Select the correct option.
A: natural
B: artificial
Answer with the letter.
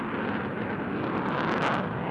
A